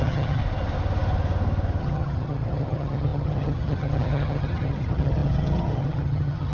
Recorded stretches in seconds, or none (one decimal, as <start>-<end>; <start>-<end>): 0.4-1.8

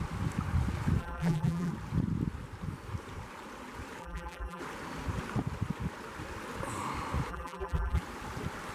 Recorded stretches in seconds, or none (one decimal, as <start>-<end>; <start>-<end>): 0.0-1.0; 1.7-4.0; 4.6-7.3; 8.0-8.7